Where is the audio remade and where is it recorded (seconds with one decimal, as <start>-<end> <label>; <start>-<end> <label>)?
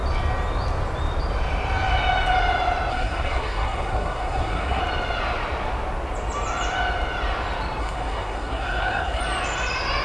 0.0-2.9 recorded; 2.9-4.8 remade; 4.8-7.8 recorded; 7.8-9.2 remade; 9.2-10.0 recorded